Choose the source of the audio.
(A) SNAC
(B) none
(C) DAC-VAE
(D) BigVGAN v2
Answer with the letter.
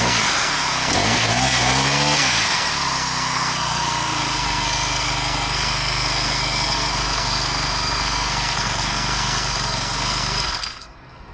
A